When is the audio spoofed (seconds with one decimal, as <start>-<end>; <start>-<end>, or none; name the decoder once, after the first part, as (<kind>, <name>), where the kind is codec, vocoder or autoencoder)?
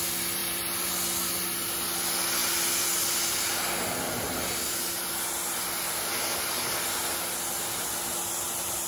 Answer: 0.4-0.9 (vocoder, BigVGAN v2)